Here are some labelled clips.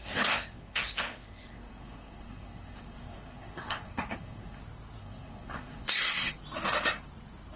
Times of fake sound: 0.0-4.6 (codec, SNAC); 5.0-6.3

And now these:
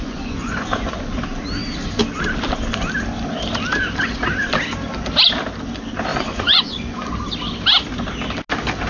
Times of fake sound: 0.0-1.0 (vocoder, Vocos); 6.1-7.2

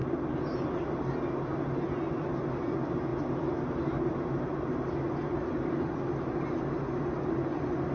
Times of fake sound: none

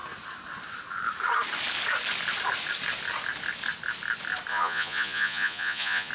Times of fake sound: 4.5-6.1 (vocoder, Vocos)

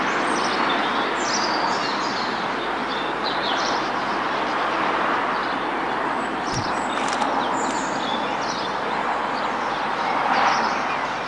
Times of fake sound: 2.8-4.4 (vocoder, BigVGAN v2); 5.4-6.9